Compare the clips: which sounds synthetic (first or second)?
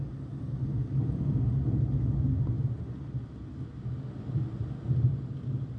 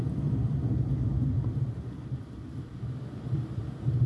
second